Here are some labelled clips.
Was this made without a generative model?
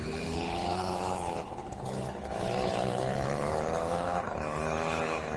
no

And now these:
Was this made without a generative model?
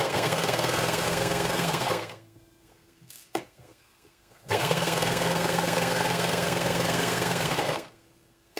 no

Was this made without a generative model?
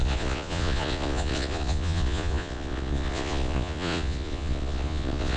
no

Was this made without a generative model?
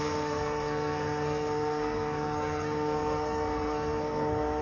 no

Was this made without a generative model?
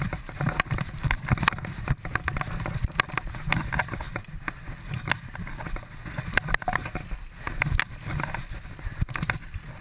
yes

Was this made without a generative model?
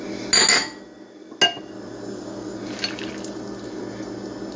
yes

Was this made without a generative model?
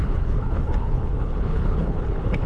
no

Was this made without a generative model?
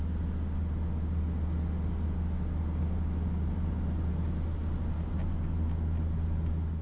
yes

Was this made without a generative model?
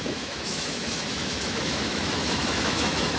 no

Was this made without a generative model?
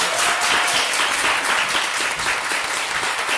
yes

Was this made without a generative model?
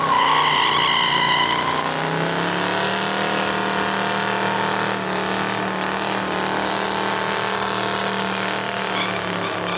yes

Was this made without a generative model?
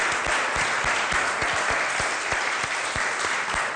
yes